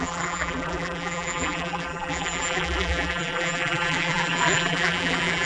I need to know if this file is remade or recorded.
remade